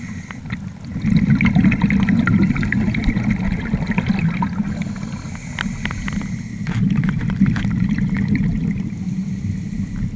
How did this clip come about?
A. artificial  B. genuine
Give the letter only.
B